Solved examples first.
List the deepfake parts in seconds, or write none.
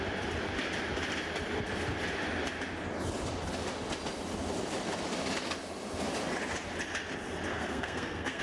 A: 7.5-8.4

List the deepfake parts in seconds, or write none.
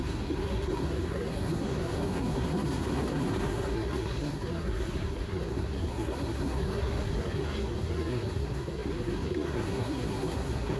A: 0.0-10.8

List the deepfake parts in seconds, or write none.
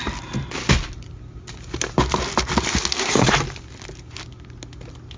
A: none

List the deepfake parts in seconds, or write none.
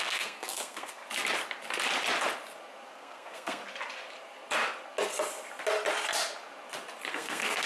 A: 0.0-1.0; 2.9-3.6; 7.1-7.7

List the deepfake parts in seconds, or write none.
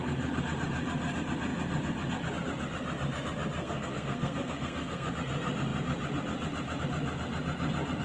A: 3.6-5.1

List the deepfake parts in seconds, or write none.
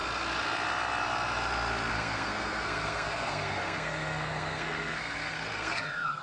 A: 1.9-6.2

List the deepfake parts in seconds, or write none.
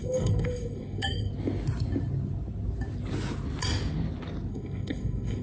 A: 0.0-1.3; 4.5-5.4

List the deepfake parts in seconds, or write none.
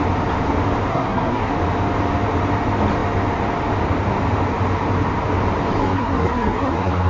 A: 0.9-1.5; 5.8-7.1